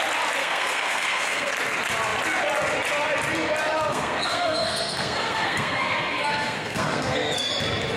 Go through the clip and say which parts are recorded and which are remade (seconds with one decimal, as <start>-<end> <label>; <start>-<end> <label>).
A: 0.0-0.4 recorded; 0.4-1.5 remade; 1.5-3.9 recorded; 3.9-7.5 remade; 7.5-8.0 recorded